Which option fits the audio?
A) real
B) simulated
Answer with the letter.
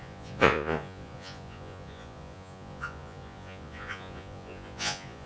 B